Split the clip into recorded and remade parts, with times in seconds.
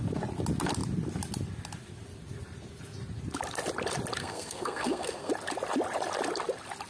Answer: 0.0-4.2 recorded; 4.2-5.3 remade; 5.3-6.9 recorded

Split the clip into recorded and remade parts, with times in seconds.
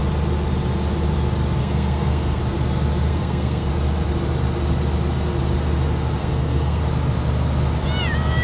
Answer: 0.0-1.6 recorded; 1.6-2.4 remade; 2.4-3.1 recorded; 3.1-3.7 remade; 3.7-6.2 recorded; 6.2-6.8 remade; 6.8-8.4 recorded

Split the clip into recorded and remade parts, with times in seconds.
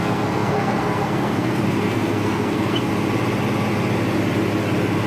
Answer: 0.0-2.9 remade; 2.9-5.1 recorded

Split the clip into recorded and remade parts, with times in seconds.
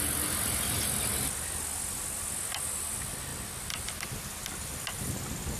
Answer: 0.0-5.6 recorded